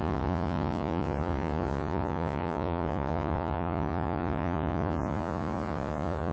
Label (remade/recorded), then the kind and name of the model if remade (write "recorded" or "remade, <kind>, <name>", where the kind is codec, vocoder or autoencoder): remade, vocoder, Vocos